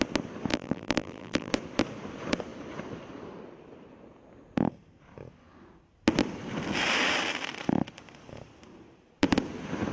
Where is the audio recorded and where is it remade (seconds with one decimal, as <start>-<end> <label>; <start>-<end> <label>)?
0.0-0.5 recorded; 0.5-1.5 remade; 1.5-9.9 recorded